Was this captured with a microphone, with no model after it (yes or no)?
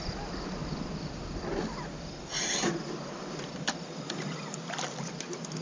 yes